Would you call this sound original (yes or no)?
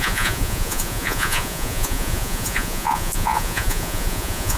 no